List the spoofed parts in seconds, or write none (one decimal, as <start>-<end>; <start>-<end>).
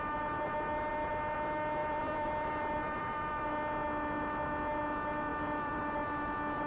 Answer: 1.8-3.5; 5.3-5.8